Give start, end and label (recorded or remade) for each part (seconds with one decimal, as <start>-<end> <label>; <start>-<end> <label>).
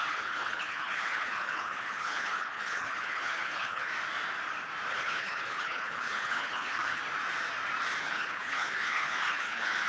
0.0-3.9 remade; 3.9-4.9 recorded; 4.9-7.0 remade; 7.0-8.0 recorded; 8.0-9.9 remade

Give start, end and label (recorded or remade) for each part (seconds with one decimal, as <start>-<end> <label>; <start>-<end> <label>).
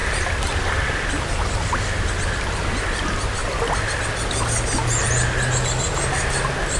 0.0-6.8 recorded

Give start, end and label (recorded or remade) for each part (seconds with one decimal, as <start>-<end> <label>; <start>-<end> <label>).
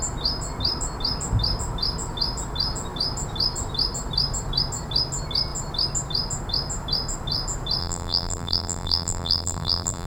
0.0-7.8 recorded; 7.8-10.1 remade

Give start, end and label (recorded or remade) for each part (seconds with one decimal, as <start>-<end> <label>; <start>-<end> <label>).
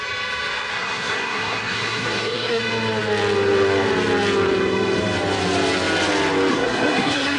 0.0-0.7 recorded; 0.7-2.6 remade; 2.6-6.5 recorded; 6.5-7.4 remade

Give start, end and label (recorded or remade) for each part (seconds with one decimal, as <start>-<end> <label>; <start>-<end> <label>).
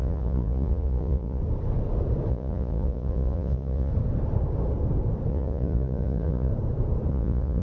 0.0-1.4 remade; 1.4-2.3 recorded; 2.3-3.9 remade; 3.9-5.3 recorded; 5.3-6.5 remade; 6.5-7.1 recorded; 7.1-7.6 remade